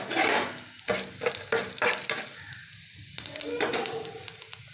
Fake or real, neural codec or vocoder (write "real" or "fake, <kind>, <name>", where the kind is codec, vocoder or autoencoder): real